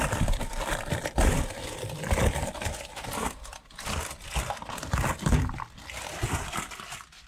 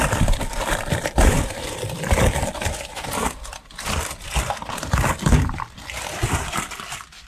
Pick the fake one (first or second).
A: second